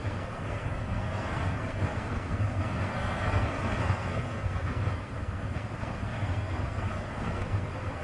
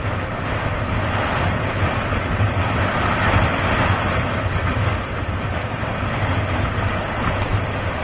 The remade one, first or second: first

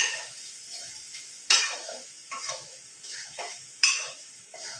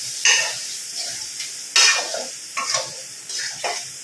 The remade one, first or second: first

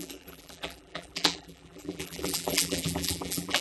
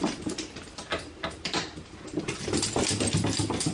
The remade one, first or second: first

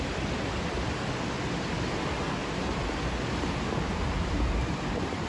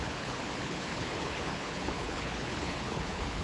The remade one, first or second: second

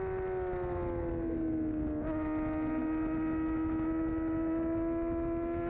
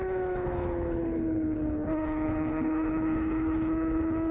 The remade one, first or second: second